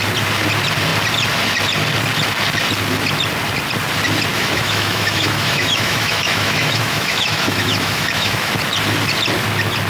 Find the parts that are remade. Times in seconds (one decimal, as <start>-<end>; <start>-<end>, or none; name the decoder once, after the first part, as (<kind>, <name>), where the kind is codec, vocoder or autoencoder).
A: 4.3-8.5 (autoencoder, DAC-VAE)